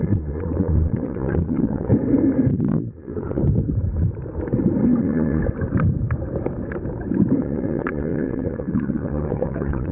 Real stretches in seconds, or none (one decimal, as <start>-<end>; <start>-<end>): 1.9-2.5; 3.4-5.0; 5.4-7.4